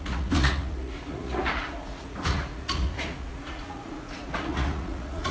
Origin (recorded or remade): remade